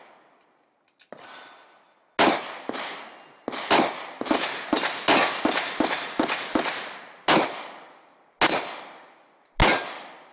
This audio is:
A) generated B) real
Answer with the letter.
B